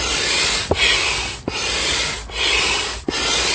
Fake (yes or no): no